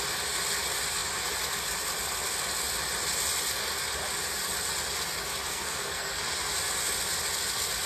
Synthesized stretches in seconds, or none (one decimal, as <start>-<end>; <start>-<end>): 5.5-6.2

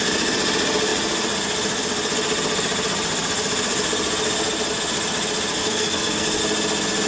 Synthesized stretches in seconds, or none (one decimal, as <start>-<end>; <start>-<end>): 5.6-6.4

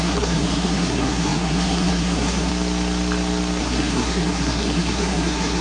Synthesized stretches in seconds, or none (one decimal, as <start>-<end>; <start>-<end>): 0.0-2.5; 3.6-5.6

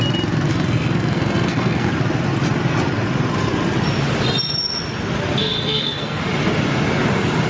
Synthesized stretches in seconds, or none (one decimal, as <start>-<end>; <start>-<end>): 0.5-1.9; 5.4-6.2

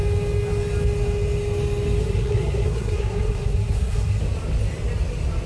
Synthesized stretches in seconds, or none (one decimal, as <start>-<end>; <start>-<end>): 2.0-4.2